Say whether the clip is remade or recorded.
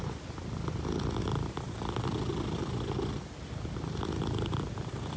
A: recorded